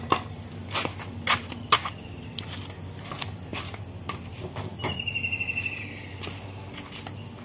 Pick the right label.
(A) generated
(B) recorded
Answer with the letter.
B